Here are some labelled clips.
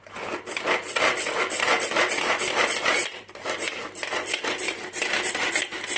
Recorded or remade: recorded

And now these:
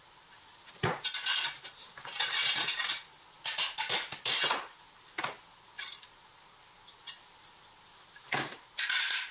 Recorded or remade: recorded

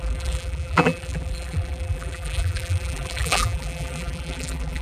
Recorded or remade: remade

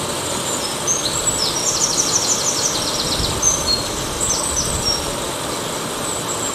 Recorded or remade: recorded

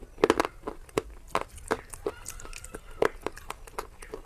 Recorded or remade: recorded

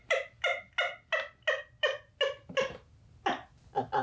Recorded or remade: recorded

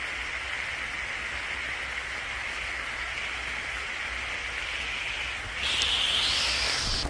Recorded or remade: recorded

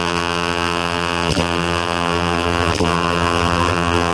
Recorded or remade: remade